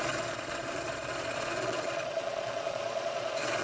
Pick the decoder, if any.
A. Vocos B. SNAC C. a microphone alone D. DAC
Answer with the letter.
A